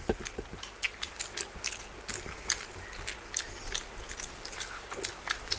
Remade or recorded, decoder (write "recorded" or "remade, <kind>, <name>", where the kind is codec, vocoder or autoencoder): recorded